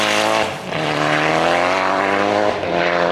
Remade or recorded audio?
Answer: recorded